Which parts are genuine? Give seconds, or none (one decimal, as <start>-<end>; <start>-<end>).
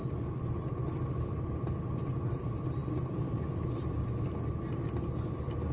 0.7-2.8; 3.9-5.7